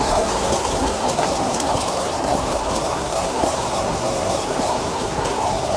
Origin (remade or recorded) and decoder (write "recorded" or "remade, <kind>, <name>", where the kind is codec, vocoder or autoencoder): remade, codec, SNAC